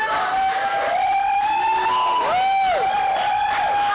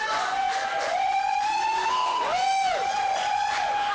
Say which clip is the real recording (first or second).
first